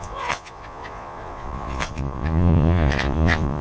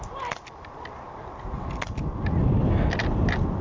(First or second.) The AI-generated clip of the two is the first